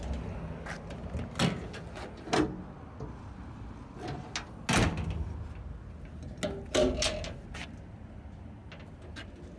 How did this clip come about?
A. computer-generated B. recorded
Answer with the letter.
B